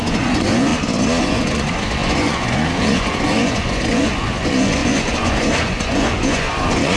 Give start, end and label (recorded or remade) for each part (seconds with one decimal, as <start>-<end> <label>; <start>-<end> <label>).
0.0-0.7 remade; 0.7-1.2 recorded; 1.2-7.0 remade